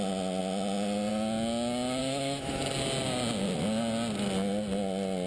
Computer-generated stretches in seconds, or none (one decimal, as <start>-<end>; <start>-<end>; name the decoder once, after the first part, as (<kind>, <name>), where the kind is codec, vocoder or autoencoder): 2.0-2.5 (autoencoder, DAC-VAE)